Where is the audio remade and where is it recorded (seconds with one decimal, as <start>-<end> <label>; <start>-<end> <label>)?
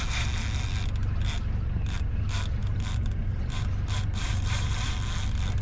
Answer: 0.0-2.6 recorded; 2.6-4.9 remade; 4.9-5.6 recorded